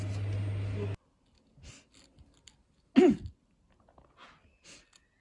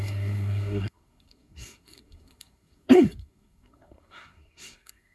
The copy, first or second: second